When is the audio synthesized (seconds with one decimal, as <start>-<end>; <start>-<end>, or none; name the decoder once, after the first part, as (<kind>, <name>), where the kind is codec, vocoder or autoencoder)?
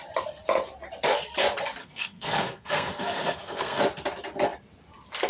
1.8-3.8 (codec, SNAC)